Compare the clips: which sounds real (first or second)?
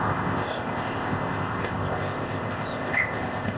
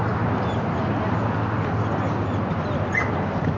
second